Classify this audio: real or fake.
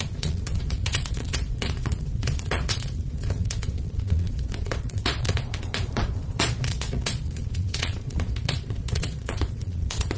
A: fake